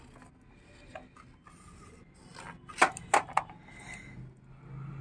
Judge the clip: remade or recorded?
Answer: recorded